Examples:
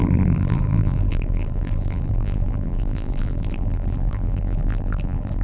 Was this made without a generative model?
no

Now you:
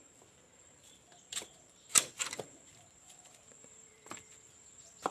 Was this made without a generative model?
no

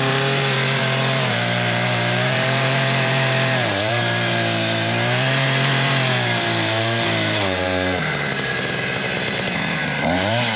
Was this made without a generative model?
no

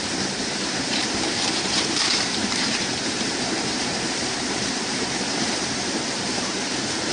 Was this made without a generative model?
no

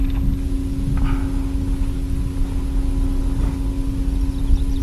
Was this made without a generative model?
yes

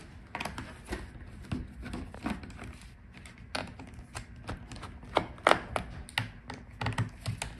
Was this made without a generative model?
yes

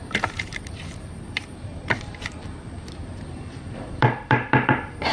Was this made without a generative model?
no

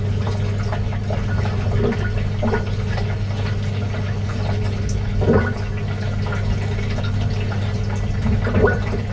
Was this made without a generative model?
yes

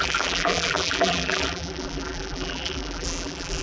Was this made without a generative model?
no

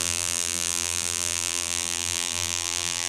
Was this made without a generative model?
no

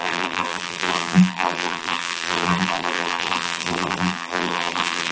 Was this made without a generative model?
no